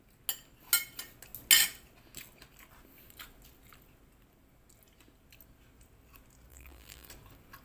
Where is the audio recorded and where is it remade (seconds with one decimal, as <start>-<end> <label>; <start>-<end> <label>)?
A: 0.0-6.5 recorded; 6.5-7.1 remade; 7.1-7.6 recorded